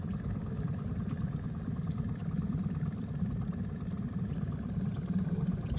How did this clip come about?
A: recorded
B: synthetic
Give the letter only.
B